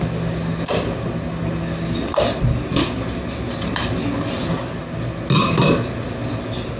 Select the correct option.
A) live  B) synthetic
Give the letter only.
A